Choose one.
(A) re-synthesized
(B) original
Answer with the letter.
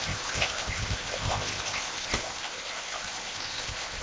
A